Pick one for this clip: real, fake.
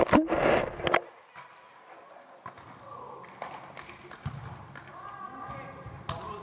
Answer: real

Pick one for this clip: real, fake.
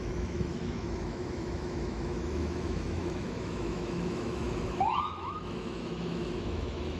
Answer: fake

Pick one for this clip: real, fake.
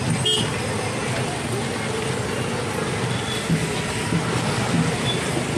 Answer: real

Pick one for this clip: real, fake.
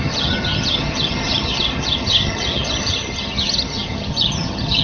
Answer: fake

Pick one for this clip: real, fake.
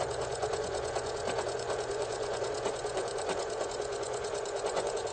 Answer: fake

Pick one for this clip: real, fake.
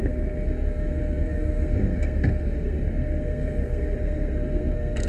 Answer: fake